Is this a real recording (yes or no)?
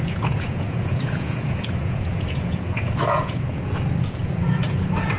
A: no